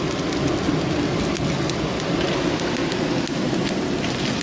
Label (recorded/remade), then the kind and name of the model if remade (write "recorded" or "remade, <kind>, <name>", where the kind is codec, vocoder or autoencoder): recorded